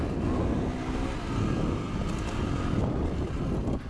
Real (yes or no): yes